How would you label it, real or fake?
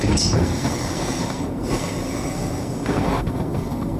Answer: fake